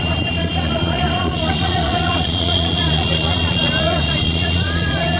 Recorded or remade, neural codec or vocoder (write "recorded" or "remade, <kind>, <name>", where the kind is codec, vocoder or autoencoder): remade, vocoder, Vocos